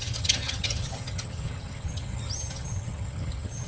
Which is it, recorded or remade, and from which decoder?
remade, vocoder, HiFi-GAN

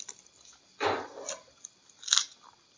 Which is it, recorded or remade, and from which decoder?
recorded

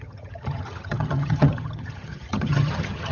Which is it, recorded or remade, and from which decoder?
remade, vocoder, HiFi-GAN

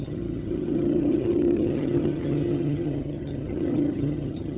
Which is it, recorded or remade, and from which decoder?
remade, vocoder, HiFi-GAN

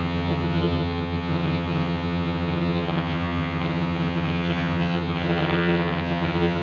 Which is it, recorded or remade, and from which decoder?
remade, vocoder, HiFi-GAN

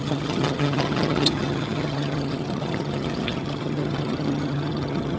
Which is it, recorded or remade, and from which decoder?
remade, vocoder, HiFi-GAN